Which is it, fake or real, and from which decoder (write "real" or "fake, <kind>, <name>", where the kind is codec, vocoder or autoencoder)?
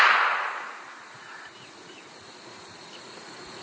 fake, vocoder, Vocos